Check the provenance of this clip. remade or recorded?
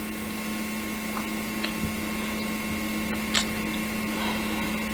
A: recorded